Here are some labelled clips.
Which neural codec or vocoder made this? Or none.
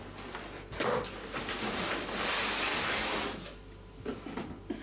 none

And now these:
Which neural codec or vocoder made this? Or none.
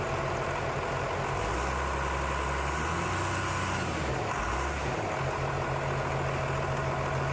none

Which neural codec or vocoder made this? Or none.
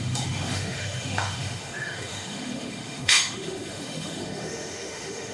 autoencoder, DAC-VAE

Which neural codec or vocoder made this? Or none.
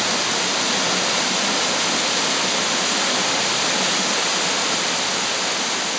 none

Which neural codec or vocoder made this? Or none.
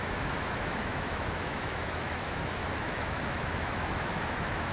autoencoder, DAC-VAE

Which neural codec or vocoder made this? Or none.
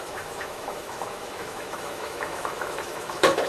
autoencoder, DAC-VAE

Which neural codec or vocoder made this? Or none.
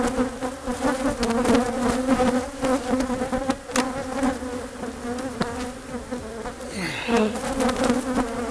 none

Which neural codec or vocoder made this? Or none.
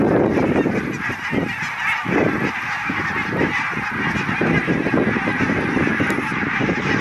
none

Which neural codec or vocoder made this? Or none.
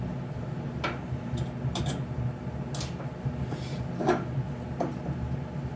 none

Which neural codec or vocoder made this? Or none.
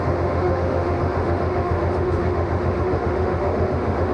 autoencoder, DAC-VAE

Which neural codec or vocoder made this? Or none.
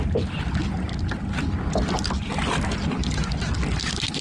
none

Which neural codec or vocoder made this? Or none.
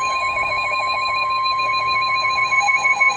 autoencoder, DAC-VAE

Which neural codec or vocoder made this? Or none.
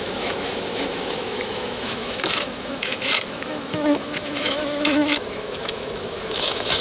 autoencoder, DAC-VAE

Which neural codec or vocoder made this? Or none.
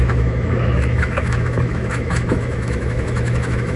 autoencoder, DAC-VAE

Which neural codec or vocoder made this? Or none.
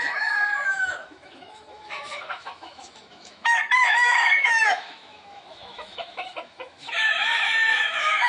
autoencoder, DAC-VAE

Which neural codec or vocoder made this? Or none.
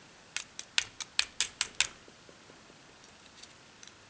none